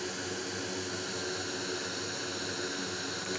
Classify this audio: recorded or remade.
recorded